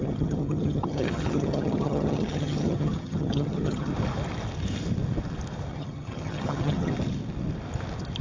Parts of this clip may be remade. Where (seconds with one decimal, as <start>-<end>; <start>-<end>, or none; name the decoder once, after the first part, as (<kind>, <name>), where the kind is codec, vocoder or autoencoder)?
0.0-3.9 (vocoder, HiFi-GAN); 5.7-6.9